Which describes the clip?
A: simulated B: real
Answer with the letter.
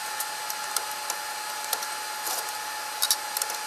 B